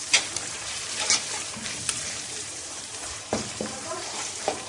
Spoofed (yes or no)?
yes